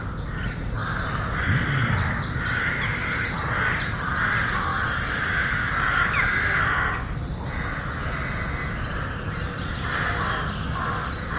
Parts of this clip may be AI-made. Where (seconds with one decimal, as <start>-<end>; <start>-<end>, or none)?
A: 0.8-1.9; 4.7-6.9